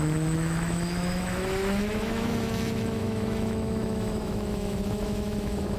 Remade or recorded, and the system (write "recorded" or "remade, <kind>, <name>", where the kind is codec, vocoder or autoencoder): remade, autoencoder, DAC-VAE